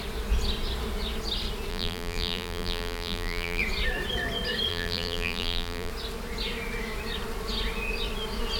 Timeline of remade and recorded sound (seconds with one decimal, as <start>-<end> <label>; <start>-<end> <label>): 0.0-1.7 recorded; 1.7-3.6 remade; 3.6-4.7 recorded; 4.7-5.9 remade; 5.9-8.6 recorded